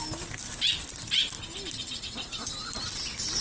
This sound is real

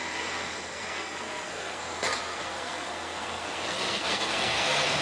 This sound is fake